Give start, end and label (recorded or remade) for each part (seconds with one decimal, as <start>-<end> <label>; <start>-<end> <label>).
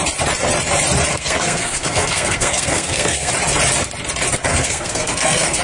0.0-1.1 recorded; 1.1-3.3 remade; 3.3-4.5 recorded; 4.5-5.6 remade